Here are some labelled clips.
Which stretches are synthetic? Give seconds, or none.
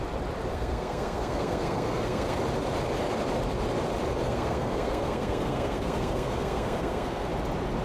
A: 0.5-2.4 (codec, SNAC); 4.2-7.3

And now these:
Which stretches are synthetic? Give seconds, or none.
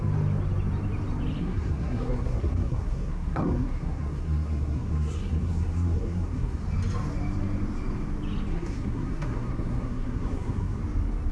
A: 1.4-6.6 (codec, SNAC); 8.5-10.8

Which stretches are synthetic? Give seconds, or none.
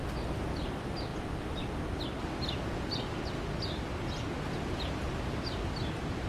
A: none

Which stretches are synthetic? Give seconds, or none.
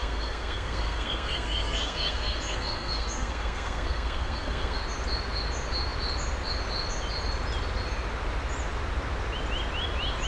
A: 0.0-4.8 (codec, SNAC)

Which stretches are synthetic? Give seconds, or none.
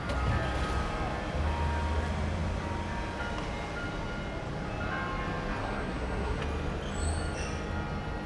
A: 5.6-6.4 (codec, SNAC)